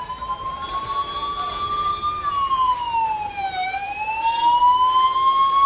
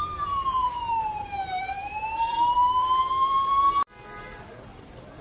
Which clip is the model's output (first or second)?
second